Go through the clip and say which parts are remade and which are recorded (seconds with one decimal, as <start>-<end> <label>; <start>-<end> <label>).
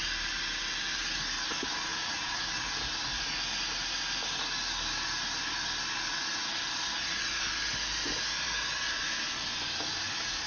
0.0-1.9 recorded; 1.9-2.6 remade; 2.6-10.5 recorded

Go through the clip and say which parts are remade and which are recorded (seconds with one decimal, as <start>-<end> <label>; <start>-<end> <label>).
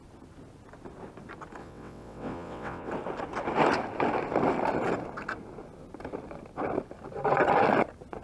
0.0-1.6 recorded; 1.6-2.9 remade; 2.9-8.2 recorded